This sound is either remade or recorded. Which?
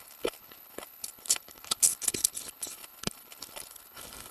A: remade